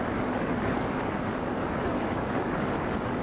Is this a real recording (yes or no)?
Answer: no